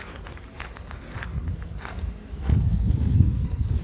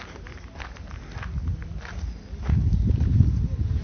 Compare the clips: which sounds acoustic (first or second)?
second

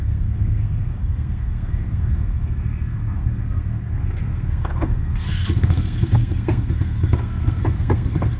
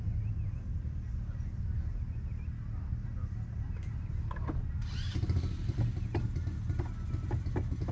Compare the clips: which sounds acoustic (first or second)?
second